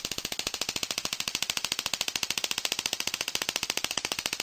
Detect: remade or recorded recorded